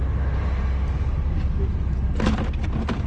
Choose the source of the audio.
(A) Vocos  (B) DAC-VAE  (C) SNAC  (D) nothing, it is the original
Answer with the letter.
D